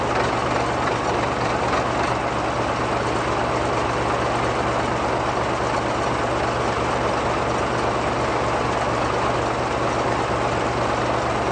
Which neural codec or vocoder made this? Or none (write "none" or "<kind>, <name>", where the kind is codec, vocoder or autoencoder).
none